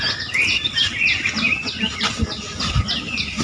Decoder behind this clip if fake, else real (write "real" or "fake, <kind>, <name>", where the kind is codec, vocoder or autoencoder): real